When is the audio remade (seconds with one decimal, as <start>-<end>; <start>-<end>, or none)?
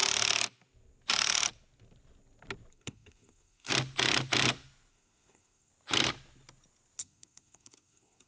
2.7-3.7; 4.9-5.7; 7.0-8.3